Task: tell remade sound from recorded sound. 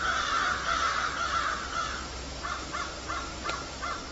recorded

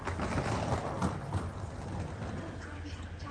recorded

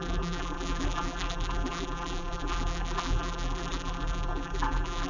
remade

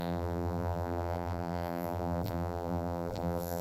remade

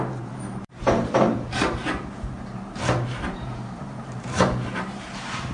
remade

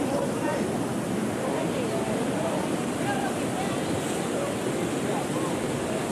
recorded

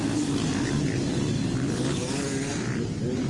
recorded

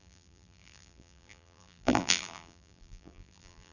remade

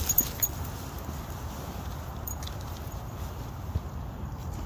remade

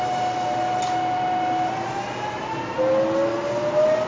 recorded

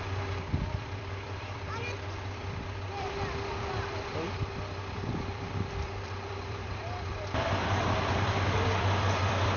remade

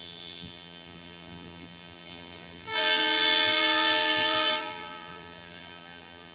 remade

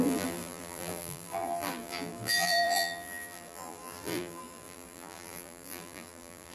remade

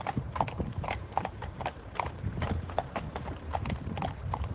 remade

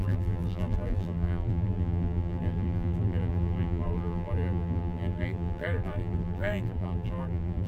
remade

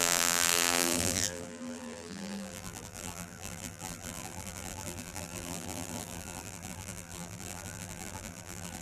remade